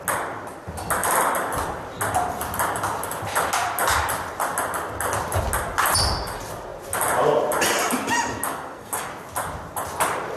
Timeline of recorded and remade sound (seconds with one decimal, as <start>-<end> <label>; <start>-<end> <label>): 0.0-8.5 recorded; 8.5-9.1 remade; 9.1-10.4 recorded